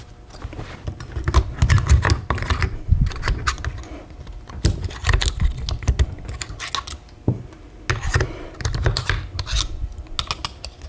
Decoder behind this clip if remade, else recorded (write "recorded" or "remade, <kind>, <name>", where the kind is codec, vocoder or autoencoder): recorded